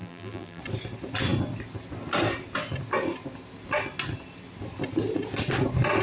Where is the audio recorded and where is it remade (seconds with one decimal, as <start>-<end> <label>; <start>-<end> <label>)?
0.0-0.6 remade; 0.6-6.0 recorded